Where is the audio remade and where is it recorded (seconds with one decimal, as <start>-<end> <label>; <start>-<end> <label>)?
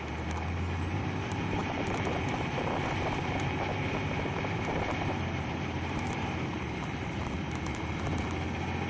0.0-8.1 remade; 8.1-8.9 recorded